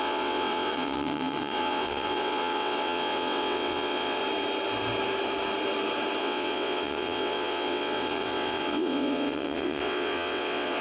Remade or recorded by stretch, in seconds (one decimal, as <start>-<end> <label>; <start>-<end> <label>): 0.0-4.2 remade; 4.2-6.2 recorded; 6.2-10.8 remade